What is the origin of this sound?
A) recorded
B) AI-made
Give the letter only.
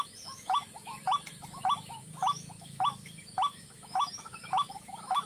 B